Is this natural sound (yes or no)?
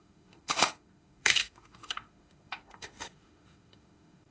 no